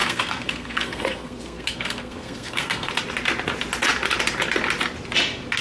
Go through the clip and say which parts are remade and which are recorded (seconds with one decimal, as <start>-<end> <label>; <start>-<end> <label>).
0.0-2.9 remade; 2.9-5.6 recorded